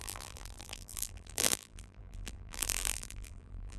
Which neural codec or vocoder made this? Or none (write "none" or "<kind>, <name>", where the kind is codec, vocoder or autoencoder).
vocoder, BigVGAN v2